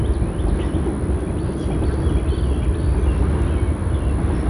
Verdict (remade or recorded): recorded